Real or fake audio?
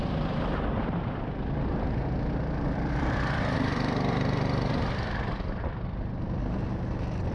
fake